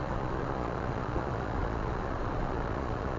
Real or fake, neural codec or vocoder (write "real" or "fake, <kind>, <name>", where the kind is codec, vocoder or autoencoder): fake, vocoder, Vocos